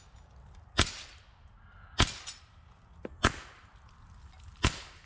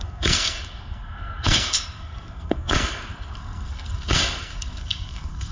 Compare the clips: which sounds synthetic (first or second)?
second